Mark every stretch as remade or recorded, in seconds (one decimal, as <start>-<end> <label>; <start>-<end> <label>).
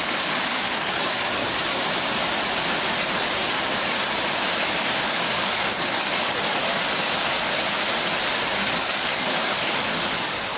0.0-1.4 remade; 1.4-5.1 recorded; 5.1-6.6 remade; 6.6-8.7 recorded; 8.7-10.6 remade